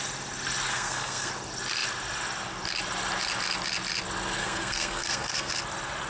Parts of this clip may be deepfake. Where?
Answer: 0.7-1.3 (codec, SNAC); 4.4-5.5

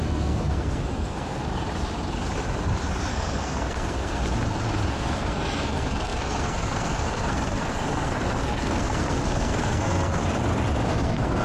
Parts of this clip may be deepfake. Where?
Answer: 0.0-1.5 (codec, SNAC); 3.1-4.2; 4.9-10.2; 10.9-11.4

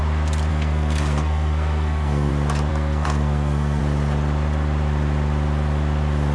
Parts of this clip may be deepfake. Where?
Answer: 0.5-2.3 (codec, SNAC); 2.7-3.8

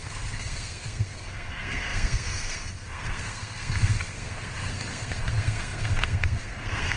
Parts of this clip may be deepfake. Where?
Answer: 0.0-7.0 (codec, SNAC)

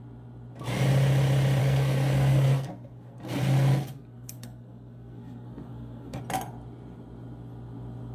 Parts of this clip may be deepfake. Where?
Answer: 1.6-6.2 (codec, SNAC)

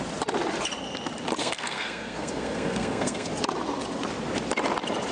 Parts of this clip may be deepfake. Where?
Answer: 1.4-3.3 (codec, SNAC)

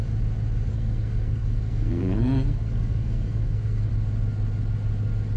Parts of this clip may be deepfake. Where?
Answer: 0.7-3.9 (codec, SNAC)